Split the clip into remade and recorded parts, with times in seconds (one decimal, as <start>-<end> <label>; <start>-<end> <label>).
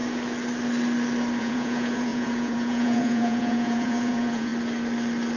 0.0-1.4 recorded; 1.4-4.5 remade; 4.5-5.4 recorded